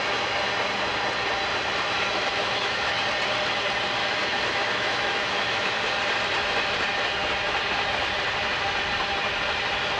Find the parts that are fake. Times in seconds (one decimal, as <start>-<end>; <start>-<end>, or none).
2.3-3.0; 4.0-5.8

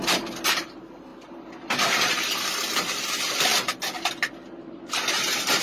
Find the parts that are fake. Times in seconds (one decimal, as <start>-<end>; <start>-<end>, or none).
none

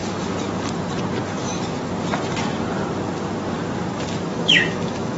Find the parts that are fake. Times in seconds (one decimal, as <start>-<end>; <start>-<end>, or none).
4.3-5.2

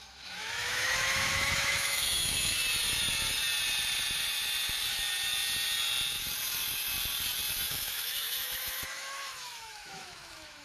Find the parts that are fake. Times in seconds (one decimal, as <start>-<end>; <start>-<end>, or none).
0.0-2.6; 7.7-10.6

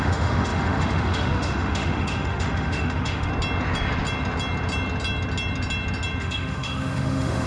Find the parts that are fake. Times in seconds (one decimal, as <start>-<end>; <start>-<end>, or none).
0.0-3.3; 6.2-7.5

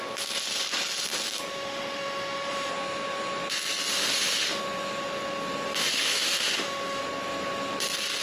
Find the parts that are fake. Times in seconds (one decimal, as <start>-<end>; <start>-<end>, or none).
1.5-2.7; 3.9-4.6; 5.8-7.0

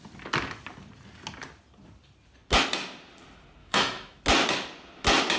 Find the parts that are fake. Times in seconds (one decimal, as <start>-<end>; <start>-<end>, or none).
3.6-4.2